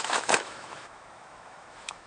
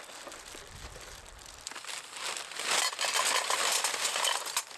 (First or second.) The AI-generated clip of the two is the first